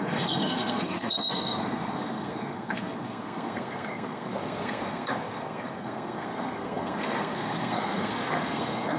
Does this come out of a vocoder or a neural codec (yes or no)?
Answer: yes